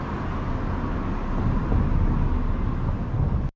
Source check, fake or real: real